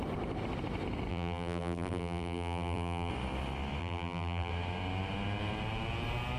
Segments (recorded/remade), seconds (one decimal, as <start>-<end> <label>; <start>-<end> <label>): 0.0-1.1 recorded; 1.1-3.1 remade; 3.1-3.8 recorded; 3.8-4.5 remade; 4.5-6.4 recorded